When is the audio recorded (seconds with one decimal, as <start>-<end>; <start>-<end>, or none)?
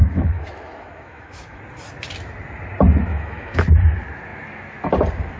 1.6-3.1; 3.6-5.4